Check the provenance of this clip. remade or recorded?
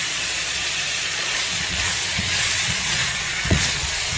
remade